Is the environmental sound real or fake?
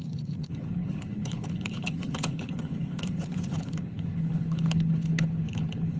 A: fake